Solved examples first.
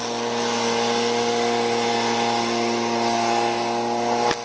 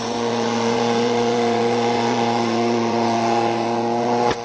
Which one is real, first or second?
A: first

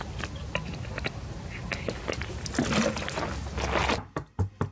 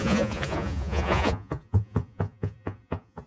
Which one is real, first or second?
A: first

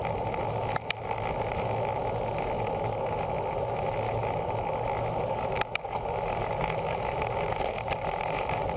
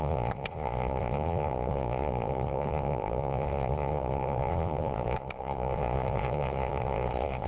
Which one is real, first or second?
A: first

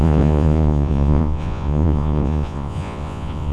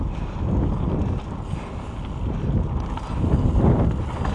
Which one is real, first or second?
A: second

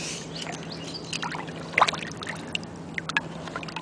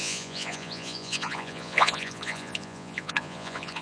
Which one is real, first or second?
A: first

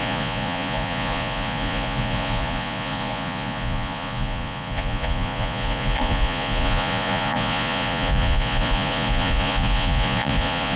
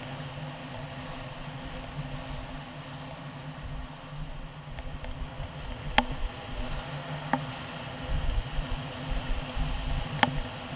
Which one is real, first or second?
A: second